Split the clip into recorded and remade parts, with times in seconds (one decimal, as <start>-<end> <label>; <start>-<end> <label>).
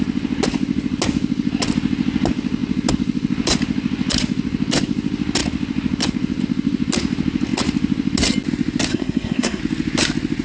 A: 0.0-8.9 recorded; 8.9-9.6 remade; 9.6-10.4 recorded